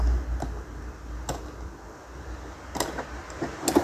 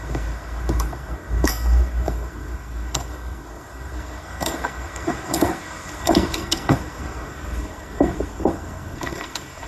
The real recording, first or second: first